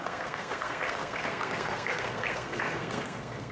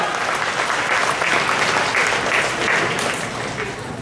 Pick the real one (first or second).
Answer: second